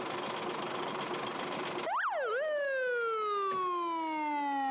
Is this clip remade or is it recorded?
recorded